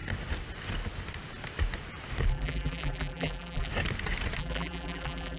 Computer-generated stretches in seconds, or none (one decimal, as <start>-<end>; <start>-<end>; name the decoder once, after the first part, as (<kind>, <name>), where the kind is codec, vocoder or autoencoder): 2.3-3.7 (vocoder, BigVGAN v2); 4.4-5.4